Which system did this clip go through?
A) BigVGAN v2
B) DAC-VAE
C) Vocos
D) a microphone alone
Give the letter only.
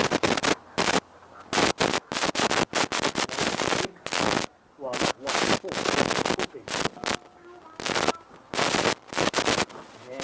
D